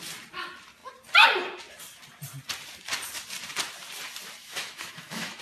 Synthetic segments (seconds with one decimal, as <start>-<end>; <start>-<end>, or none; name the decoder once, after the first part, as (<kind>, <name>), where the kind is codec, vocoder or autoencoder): 4.4-5.4 (autoencoder, DAC-VAE)